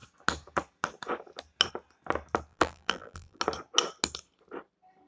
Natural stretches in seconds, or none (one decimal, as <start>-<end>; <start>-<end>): 0.0-2.5; 3.4-5.1